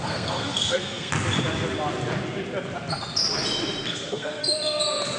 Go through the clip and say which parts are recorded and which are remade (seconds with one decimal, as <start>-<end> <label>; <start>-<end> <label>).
0.0-1.1 remade; 1.1-3.9 recorded; 3.9-4.4 remade; 4.4-5.2 recorded

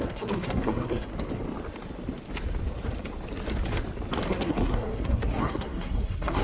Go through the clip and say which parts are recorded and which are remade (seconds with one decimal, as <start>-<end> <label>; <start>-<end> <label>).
0.0-1.1 remade; 1.1-4.3 recorded; 4.3-6.4 remade

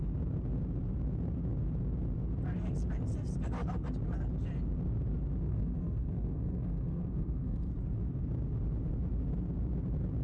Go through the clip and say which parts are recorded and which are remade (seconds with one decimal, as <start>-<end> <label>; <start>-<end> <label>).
0.0-5.5 recorded; 5.5-7.7 remade; 7.7-10.2 recorded

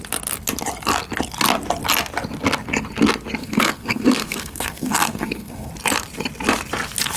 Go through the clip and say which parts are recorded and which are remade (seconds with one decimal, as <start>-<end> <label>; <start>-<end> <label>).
0.0-3.4 recorded; 3.4-5.7 remade; 5.7-7.2 recorded

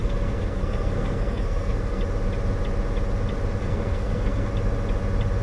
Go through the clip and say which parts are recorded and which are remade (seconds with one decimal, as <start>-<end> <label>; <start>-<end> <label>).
0.0-2.0 remade; 2.0-3.6 recorded; 3.6-4.5 remade; 4.5-5.4 recorded

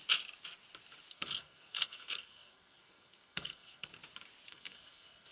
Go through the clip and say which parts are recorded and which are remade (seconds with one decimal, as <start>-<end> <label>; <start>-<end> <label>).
0.0-1.1 recorded; 1.1-3.9 remade; 3.9-4.5 recorded; 4.5-5.3 remade